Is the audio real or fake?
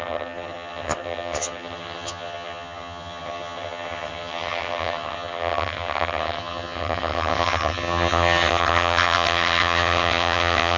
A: fake